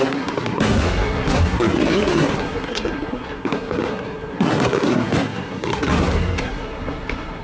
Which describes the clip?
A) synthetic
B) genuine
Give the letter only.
A